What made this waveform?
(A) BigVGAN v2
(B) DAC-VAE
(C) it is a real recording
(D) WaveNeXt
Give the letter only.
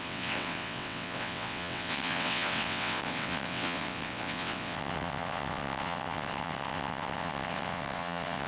D